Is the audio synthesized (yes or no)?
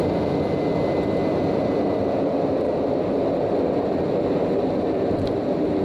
no